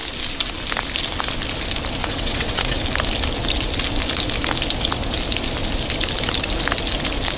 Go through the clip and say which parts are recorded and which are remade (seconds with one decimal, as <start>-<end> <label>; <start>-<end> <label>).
0.0-2.0 recorded; 2.0-2.8 remade; 2.8-7.4 recorded